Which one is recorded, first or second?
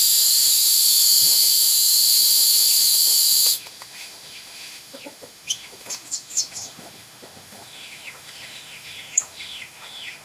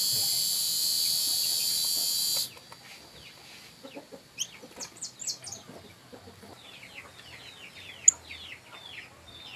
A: second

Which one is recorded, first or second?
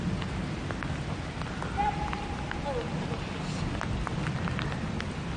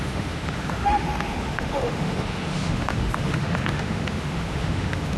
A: first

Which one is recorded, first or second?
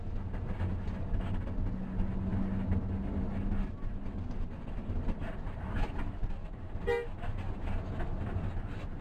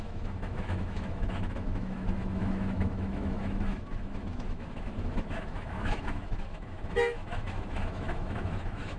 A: first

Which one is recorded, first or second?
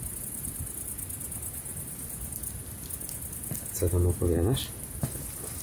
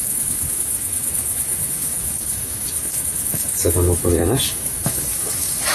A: first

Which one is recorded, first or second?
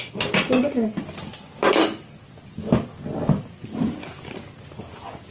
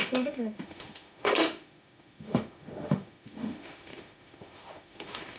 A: first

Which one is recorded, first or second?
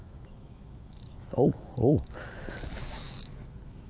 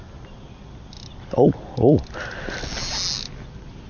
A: second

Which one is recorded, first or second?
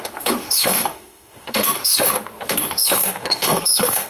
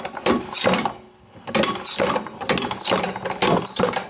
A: second